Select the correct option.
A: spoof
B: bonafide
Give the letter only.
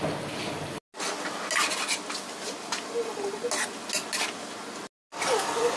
B